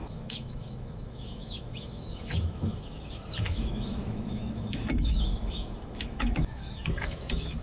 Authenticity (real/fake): fake